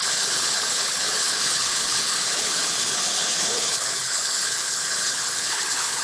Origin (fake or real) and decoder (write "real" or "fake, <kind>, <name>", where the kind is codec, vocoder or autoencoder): fake, codec, HILCodec